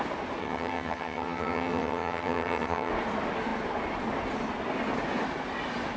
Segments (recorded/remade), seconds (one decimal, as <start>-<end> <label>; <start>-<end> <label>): 0.0-0.4 recorded; 0.4-2.9 remade; 2.9-6.0 recorded